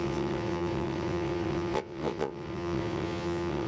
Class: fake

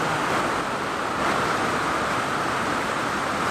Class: real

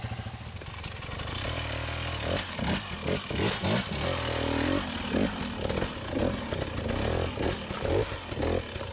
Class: real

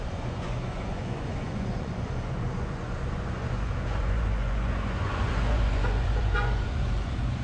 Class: fake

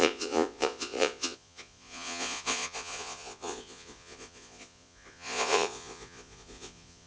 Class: fake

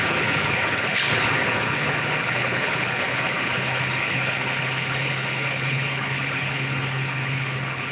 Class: fake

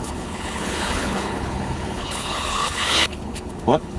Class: fake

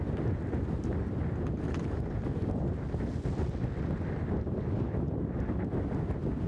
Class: real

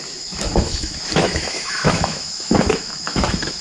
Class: fake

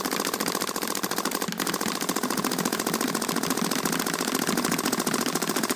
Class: real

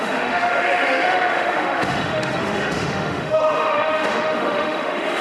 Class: fake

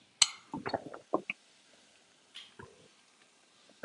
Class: real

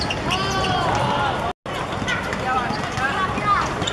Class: real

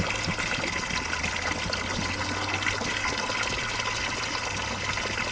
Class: real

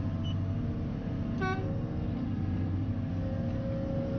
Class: real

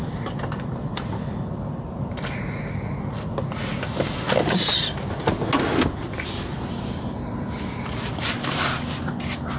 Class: real